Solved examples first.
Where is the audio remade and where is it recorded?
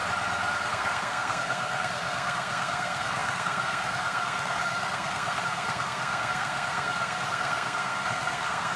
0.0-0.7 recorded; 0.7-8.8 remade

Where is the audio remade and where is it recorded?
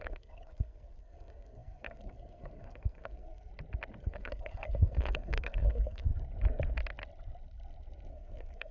0.0-3.5 remade; 3.5-4.0 recorded; 4.0-6.1 remade; 6.1-8.1 recorded; 8.1-8.7 remade